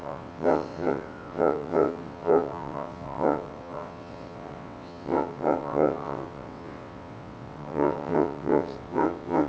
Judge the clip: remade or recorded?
remade